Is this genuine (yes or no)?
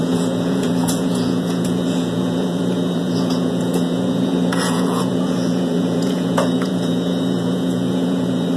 no